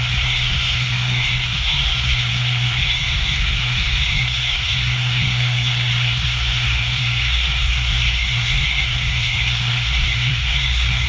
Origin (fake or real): fake